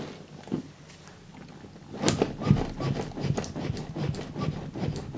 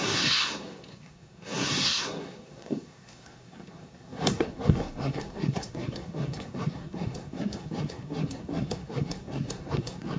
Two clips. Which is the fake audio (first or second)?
second